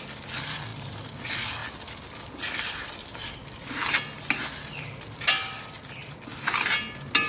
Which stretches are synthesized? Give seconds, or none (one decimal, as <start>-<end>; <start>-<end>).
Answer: none

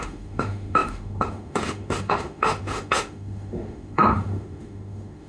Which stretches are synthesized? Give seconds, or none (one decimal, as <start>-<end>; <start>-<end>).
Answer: 0.0-5.3

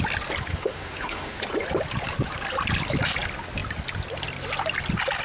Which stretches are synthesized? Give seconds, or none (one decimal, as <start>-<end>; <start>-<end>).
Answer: 0.5-1.4

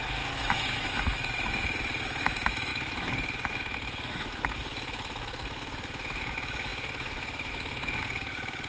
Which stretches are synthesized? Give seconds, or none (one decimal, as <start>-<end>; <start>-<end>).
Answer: 0.0-8.7

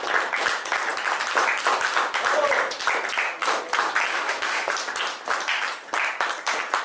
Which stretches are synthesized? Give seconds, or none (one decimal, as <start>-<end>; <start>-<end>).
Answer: 4.1-4.7

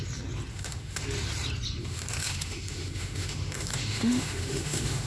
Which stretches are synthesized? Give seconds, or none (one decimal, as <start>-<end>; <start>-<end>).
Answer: 0.5-1.0; 1.8-5.1

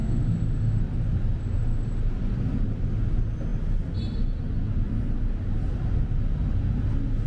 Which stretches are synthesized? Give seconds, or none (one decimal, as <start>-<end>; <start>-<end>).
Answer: 0.0-0.8; 1.4-2.0

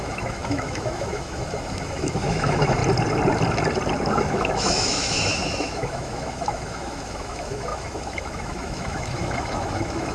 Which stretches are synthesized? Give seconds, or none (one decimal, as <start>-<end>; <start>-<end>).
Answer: 0.0-2.8; 4.1-10.1